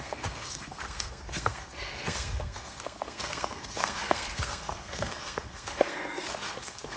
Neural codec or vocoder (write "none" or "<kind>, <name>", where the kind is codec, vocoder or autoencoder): codec, SNAC